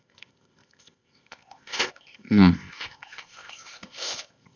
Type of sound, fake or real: fake